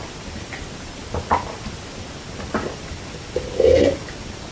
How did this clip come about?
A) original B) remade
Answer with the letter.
A